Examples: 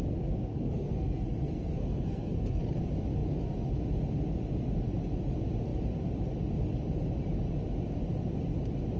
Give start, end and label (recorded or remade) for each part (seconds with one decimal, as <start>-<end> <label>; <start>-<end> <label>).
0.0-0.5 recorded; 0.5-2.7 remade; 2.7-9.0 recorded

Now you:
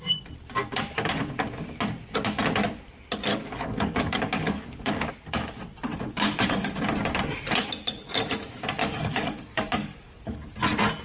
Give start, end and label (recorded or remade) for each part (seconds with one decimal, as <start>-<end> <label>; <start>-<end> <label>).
0.0-3.3 recorded; 3.3-5.1 remade; 5.1-5.9 recorded; 5.9-6.8 remade; 6.8-8.8 recorded; 8.8-10.5 remade; 10.5-11.0 recorded

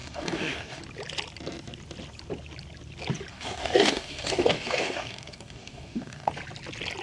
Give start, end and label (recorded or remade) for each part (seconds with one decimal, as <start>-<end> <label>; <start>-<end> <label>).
0.0-0.8 remade; 0.8-3.3 recorded; 3.3-6.3 remade; 6.3-7.0 recorded

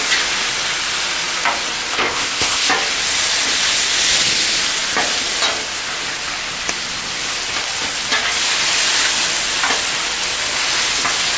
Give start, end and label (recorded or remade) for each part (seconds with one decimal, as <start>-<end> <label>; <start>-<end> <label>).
0.0-1.9 recorded; 1.9-2.7 remade; 2.7-11.4 recorded

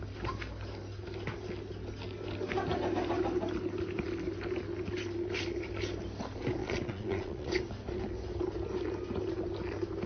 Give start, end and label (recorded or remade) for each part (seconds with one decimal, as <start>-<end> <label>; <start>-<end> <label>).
0.0-6.6 recorded; 6.6-7.5 remade; 7.5-10.1 recorded

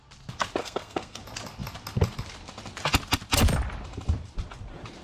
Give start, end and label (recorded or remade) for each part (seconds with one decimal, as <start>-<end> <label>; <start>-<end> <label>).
0.0-0.6 recorded; 0.6-1.2 remade; 1.2-5.0 recorded

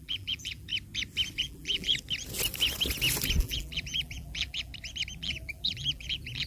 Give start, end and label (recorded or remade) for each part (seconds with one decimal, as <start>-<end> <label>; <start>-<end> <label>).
0.0-0.7 remade; 0.7-1.4 recorded; 1.4-1.9 remade; 1.9-3.4 recorded; 3.4-4.7 remade; 4.7-5.2 recorded; 5.2-6.5 remade

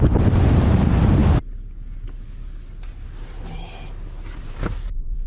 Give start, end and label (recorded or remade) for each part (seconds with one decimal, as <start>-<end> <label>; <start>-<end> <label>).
0.0-1.2 remade; 1.2-4.4 recorded; 4.4-5.3 remade